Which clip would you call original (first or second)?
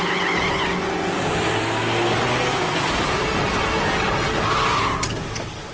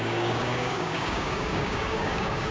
first